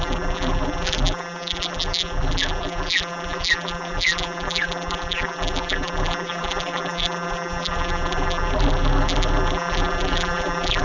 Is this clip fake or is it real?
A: fake